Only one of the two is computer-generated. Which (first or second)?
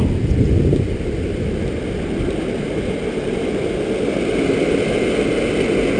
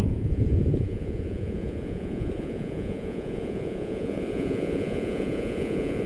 second